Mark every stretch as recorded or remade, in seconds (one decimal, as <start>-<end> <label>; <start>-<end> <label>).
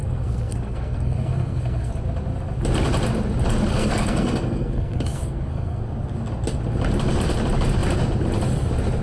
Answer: 0.0-1.9 remade; 1.9-3.7 recorded; 3.7-5.8 remade; 5.8-9.0 recorded